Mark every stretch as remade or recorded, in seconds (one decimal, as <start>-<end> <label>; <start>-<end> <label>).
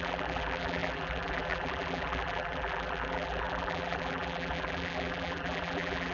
0.0-6.1 remade